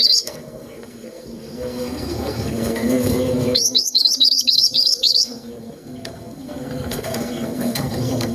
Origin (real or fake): fake